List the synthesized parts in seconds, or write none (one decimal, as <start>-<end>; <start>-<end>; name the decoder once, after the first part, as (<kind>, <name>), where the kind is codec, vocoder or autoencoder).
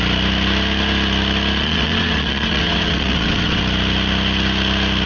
1.6-3.6 (vocoder, WaveNeXt)